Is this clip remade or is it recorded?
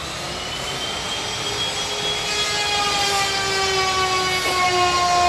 recorded